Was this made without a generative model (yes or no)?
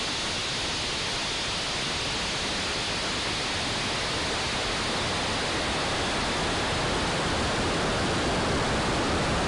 yes